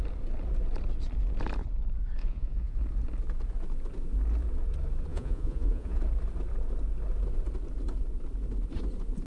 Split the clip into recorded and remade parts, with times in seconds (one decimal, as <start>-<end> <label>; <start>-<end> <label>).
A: 0.0-2.2 recorded; 2.2-2.8 remade; 2.8-5.1 recorded; 5.1-6.0 remade; 6.0-9.3 recorded